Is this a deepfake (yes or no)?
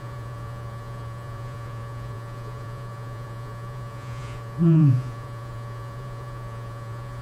yes